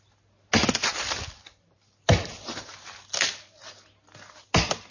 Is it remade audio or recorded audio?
recorded